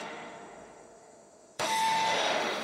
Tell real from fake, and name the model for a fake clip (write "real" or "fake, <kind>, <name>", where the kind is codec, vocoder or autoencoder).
fake, autoencoder, DAC-VAE